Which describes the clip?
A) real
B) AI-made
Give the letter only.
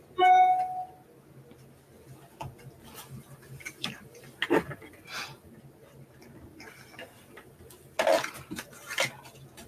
A